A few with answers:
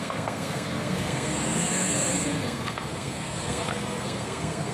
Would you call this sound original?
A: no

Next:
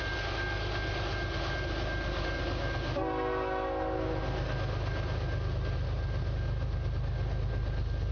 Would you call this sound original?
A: yes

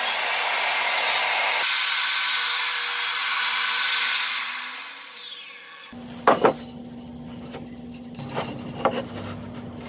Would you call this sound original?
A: yes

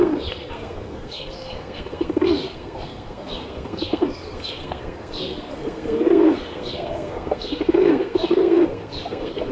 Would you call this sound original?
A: no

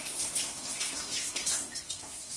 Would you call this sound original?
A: no